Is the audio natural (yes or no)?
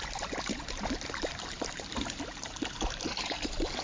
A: no